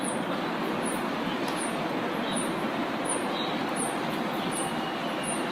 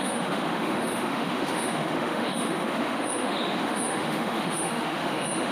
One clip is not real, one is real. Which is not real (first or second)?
second